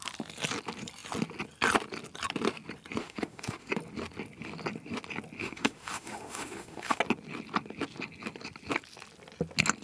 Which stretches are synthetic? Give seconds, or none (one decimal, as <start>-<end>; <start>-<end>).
3.0-3.7; 5.4-7.0